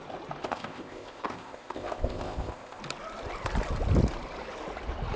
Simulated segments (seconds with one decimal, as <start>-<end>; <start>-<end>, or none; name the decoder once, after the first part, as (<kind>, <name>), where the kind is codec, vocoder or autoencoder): 0.4-2.8 (codec, ZipCodec)